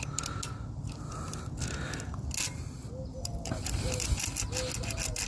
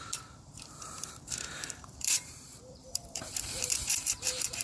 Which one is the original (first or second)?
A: first